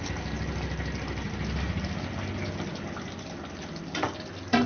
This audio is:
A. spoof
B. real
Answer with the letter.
B